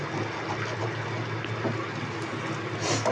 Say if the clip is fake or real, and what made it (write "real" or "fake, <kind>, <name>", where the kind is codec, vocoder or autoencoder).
real